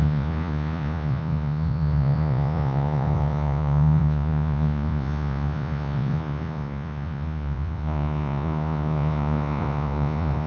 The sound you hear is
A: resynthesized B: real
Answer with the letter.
A